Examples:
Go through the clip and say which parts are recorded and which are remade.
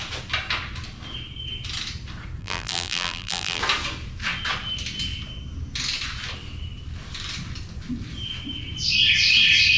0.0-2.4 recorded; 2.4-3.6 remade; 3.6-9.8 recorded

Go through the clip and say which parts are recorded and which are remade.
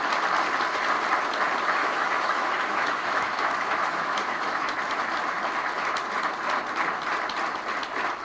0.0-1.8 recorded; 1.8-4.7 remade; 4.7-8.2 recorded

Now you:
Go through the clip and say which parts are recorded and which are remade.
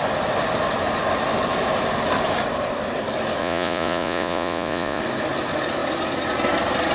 0.0-3.4 recorded; 3.4-5.0 remade; 5.0-6.9 recorded